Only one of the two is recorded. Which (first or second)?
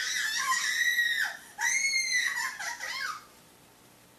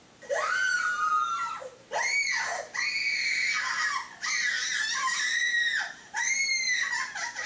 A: first